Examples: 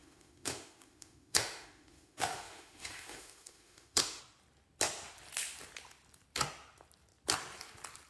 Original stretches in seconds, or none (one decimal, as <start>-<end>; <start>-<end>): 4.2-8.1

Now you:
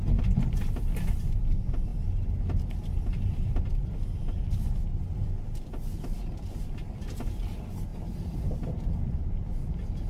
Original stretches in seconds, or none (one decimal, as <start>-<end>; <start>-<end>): 0.0-10.1

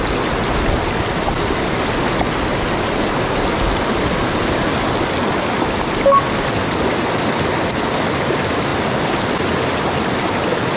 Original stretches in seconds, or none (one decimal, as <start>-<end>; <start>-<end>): 0.0-10.8

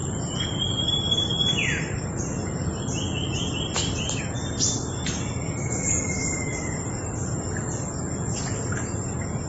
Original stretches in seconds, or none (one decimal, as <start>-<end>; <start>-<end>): 0.0-9.5

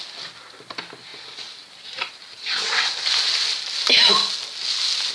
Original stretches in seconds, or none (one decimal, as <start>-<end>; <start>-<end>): 0.0-5.1

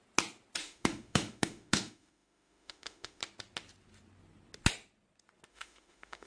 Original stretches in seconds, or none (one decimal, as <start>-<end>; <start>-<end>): 0.0-0.6; 3.2-5.5

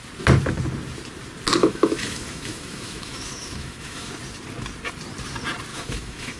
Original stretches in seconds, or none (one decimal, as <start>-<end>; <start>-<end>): 0.0-1.6; 4.1-5.7

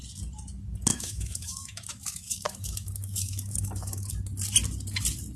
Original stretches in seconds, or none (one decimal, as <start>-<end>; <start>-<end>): 0.0-0.9; 4.1-5.4